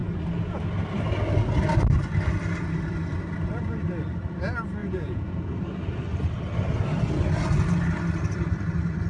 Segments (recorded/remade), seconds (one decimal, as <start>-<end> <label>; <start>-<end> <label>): 0.0-4.8 recorded; 4.8-5.5 remade; 5.5-9.1 recorded